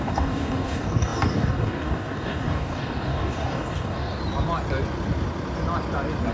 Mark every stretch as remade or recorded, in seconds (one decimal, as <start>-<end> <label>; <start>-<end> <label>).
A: 0.0-4.2 remade; 4.2-6.3 recorded